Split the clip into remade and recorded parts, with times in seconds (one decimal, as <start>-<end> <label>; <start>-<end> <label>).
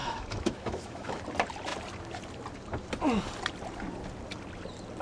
0.0-1.2 remade; 1.2-5.0 recorded